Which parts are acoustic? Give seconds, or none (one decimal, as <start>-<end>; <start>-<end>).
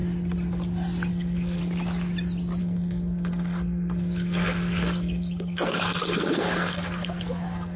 0.0-1.1; 1.6-2.6